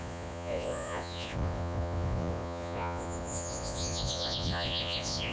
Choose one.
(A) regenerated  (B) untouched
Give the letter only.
A